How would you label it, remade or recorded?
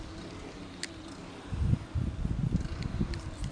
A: recorded